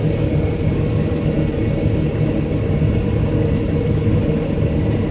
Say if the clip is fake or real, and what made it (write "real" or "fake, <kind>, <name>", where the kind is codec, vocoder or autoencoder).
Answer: real